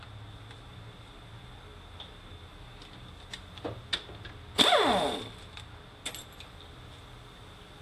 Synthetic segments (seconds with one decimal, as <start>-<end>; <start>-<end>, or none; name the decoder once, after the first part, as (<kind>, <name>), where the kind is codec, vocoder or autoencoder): none